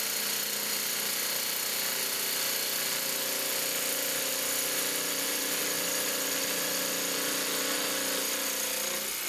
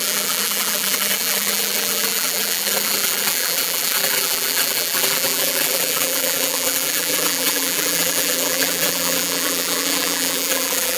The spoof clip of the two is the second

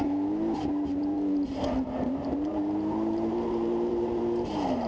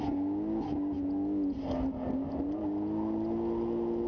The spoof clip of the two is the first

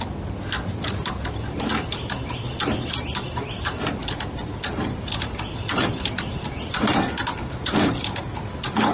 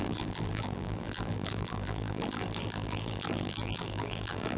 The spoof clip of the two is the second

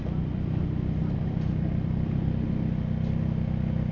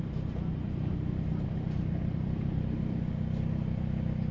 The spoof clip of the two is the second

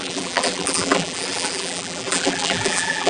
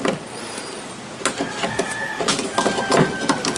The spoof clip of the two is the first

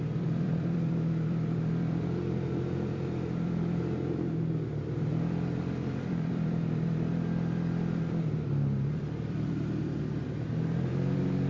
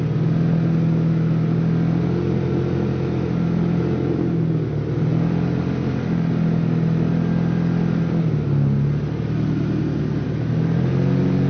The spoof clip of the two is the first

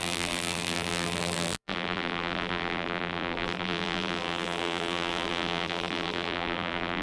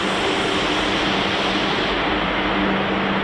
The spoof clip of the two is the first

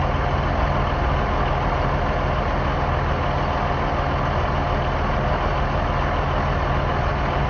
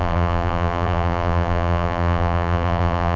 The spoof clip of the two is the second